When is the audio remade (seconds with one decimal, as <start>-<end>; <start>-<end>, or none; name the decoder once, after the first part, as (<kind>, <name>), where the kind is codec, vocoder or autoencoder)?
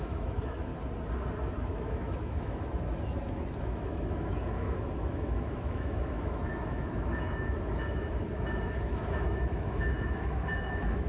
0.0-0.7 (autoencoder, DAC-VAE); 1.6-2.7; 3.6-11.1